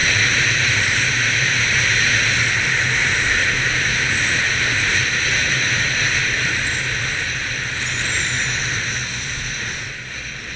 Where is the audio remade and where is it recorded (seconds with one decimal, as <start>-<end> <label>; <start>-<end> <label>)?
0.0-2.1 remade; 2.1-3.4 recorded; 3.4-4.0 remade; 4.0-5.0 recorded; 5.0-6.5 remade; 6.5-10.6 recorded